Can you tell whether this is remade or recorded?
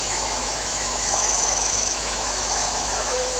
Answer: remade